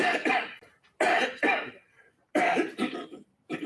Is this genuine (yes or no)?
no